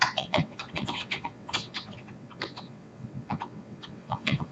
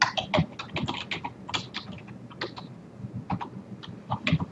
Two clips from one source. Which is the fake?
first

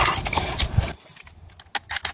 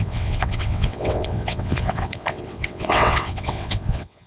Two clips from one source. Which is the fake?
second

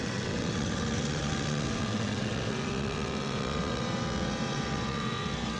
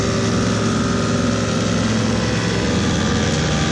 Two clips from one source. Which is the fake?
first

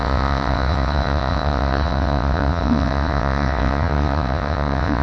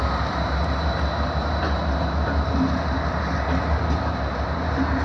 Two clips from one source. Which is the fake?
first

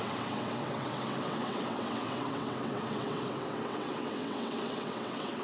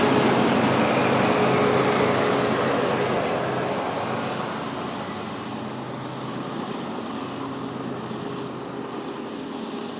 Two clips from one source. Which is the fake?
first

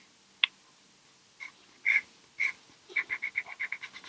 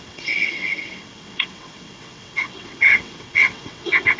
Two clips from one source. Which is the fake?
second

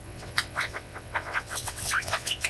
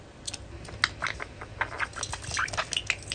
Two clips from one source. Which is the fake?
first